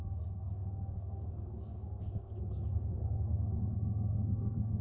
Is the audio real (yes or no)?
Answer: no